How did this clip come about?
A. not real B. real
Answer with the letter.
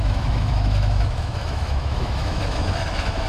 A